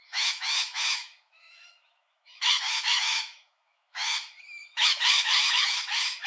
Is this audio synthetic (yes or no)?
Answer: yes